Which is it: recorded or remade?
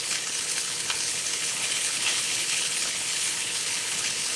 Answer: remade